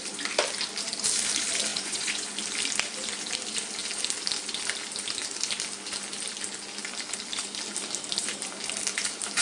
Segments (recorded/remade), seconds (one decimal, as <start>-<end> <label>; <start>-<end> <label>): 0.0-1.7 recorded; 1.7-2.3 remade; 2.3-9.4 recorded